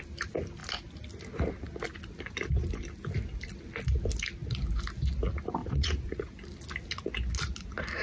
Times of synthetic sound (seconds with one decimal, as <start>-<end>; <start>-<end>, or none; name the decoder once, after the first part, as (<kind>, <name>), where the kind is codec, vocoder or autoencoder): 5.6-6.4 (vocoder, Vocos)